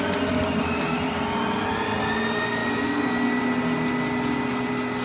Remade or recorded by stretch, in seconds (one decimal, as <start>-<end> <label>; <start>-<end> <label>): 0.0-5.0 recorded